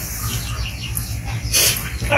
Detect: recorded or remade recorded